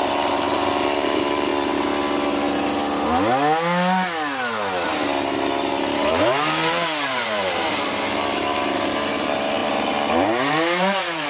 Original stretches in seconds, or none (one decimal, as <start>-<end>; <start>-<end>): 1.5-6.1